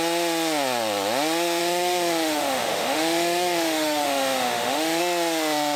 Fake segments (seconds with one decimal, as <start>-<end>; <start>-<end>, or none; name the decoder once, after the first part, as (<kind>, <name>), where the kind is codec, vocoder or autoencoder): 1.6-5.0 (autoencoder, DAC-VAE)